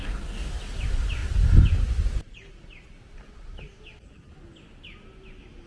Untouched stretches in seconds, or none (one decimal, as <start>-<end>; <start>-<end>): 0.5-5.7